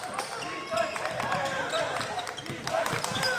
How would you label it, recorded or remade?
remade